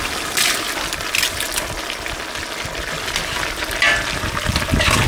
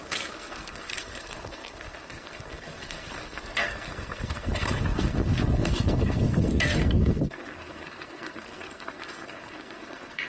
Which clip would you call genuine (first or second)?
first